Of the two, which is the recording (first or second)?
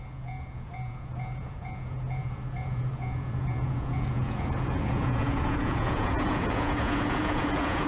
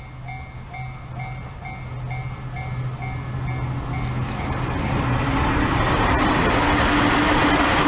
second